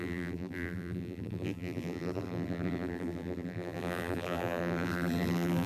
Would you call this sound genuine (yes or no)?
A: no